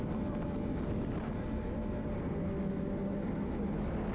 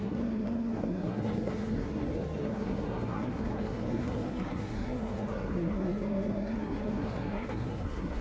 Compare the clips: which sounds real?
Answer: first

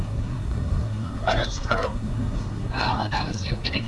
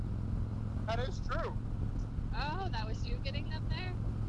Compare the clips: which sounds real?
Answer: second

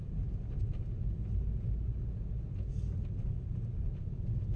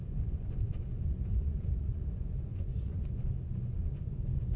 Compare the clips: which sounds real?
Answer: first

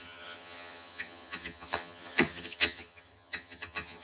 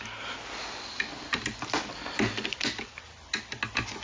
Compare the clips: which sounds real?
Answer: second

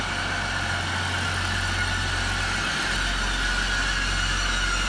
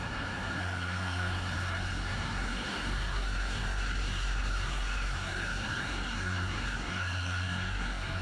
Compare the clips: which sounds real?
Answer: first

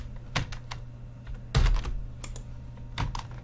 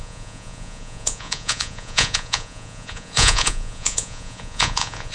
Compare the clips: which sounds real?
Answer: first